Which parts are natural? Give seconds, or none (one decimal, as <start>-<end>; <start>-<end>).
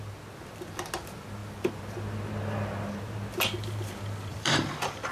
0.0-4.3